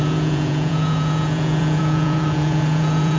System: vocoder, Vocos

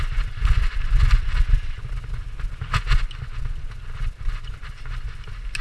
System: none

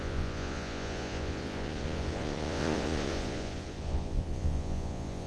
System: vocoder, Vocos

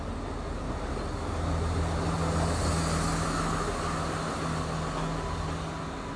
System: none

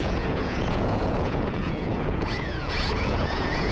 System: vocoder, Vocos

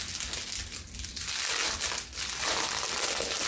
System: none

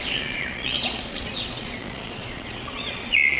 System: vocoder, Vocos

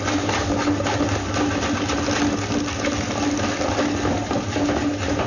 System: none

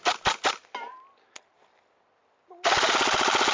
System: none